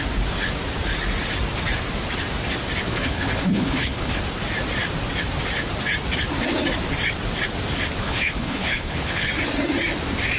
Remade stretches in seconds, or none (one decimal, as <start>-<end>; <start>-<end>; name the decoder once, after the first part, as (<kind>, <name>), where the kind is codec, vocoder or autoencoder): 2.9-4.2 (codec, HILCodec); 8.0-9.3